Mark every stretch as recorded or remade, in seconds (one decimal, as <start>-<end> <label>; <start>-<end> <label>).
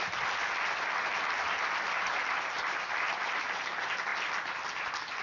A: 0.0-5.2 recorded